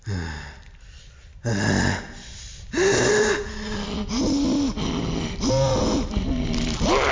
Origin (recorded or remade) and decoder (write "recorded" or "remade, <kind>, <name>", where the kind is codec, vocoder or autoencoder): recorded